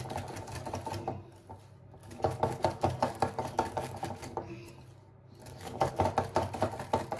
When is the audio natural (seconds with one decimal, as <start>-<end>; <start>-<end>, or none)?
0.0-2.0; 4.7-5.4; 5.9-7.2